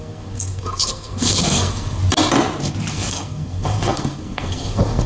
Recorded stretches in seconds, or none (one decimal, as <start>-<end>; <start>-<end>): 2.0-2.9